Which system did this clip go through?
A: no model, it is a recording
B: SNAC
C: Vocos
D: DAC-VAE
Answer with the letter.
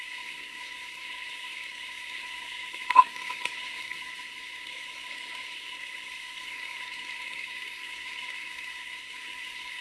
B